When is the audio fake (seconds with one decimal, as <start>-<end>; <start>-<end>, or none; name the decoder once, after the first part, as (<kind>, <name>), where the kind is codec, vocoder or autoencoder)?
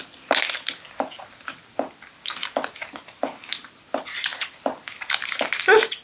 none